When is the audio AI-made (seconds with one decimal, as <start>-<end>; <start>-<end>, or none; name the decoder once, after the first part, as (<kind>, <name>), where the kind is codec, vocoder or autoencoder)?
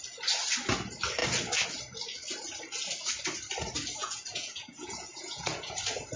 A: 4.0-5.7 (vocoder, Vocos)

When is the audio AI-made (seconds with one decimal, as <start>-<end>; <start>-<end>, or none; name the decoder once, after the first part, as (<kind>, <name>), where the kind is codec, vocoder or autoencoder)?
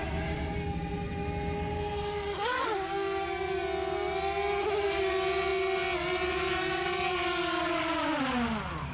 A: none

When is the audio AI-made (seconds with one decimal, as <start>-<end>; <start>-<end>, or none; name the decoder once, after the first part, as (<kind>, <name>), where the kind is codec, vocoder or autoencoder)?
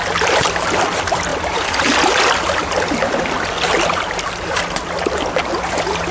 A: none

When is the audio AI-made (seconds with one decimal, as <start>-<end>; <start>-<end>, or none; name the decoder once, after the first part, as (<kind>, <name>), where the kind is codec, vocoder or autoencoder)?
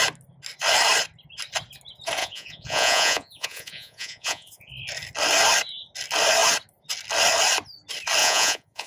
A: 2.2-4.7 (vocoder, Vocos); 8.2-8.9